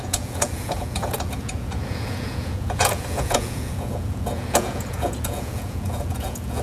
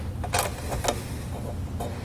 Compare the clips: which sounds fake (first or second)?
first